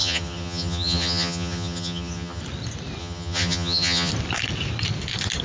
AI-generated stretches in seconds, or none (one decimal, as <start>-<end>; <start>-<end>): 0.0-2.4; 3.0-4.1